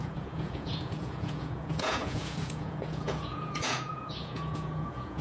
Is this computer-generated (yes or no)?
yes